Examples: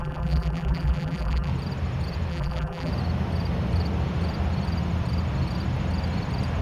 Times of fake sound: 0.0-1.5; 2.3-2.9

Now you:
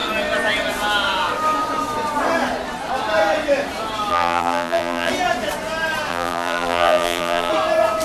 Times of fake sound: 4.1-5.1; 6.1-7.5

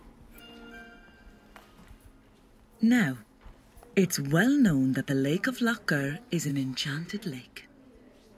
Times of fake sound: 6.5-7.1

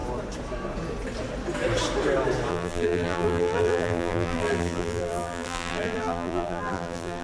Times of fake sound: 2.5-7.2